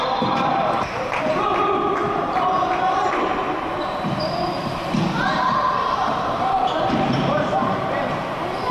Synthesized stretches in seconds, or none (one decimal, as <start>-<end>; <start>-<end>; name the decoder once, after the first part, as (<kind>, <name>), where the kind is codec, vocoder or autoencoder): 0.0-2.0 (vocoder, BigVGAN v2); 2.6-8.7